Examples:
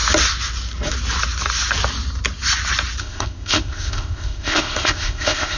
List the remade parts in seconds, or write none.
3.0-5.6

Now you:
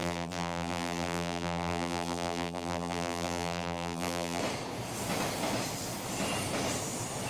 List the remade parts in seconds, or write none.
0.0-4.4